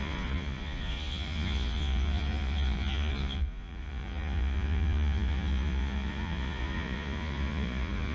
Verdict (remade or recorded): remade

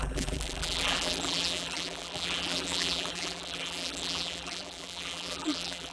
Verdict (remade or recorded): remade